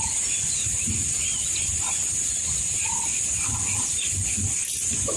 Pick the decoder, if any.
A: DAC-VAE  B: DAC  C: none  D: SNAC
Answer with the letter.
C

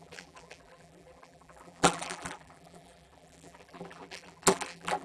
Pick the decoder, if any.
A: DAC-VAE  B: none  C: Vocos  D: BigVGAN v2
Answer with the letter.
D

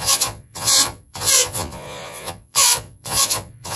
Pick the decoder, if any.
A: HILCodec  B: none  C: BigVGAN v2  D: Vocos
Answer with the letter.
D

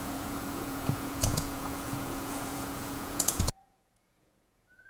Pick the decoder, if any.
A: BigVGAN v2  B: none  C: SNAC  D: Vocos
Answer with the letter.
D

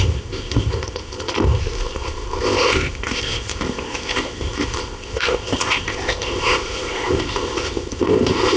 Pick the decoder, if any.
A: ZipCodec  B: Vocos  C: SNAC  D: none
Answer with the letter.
A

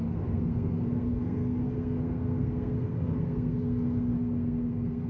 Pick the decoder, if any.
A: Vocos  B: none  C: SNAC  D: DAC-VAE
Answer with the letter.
C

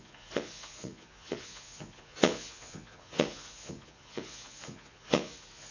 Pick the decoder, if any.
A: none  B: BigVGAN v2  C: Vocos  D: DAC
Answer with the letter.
C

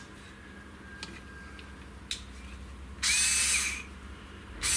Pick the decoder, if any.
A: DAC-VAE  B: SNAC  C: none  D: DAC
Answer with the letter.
C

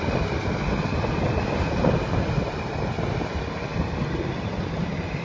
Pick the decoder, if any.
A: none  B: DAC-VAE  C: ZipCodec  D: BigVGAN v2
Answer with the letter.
A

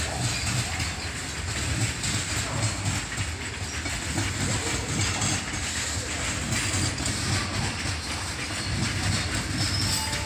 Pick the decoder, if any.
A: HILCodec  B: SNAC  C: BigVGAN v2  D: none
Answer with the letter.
D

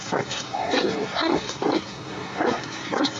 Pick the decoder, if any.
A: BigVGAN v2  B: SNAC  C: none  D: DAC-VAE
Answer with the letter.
B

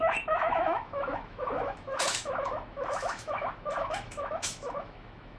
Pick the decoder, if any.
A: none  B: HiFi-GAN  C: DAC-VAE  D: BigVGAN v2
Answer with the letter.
C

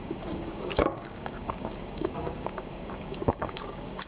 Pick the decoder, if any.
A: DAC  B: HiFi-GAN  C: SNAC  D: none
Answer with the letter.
A